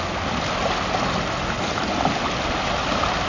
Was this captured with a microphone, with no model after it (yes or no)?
yes